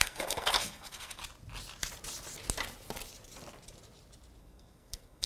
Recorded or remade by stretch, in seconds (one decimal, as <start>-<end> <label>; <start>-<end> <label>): 0.0-1.2 remade; 1.2-4.4 recorded; 4.4-5.3 remade